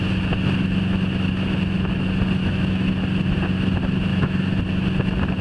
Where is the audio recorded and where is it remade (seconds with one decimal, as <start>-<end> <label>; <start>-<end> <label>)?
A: 0.0-2.4 recorded; 2.4-2.9 remade; 2.9-4.1 recorded; 4.1-4.6 remade; 4.6-5.4 recorded